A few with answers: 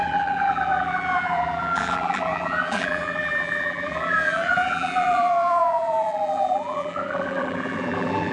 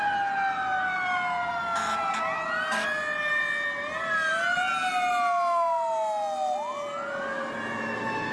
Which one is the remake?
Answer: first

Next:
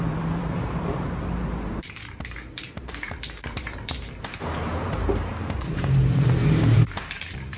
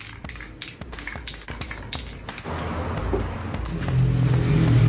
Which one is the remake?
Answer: first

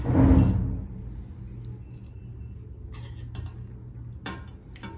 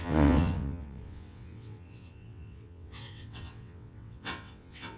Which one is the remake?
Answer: second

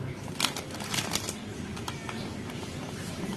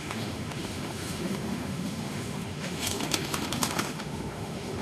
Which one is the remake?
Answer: second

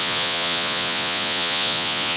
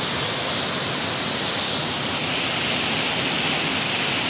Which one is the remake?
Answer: first